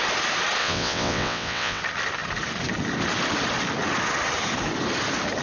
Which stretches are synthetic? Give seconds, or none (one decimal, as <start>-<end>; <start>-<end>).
0.6-1.8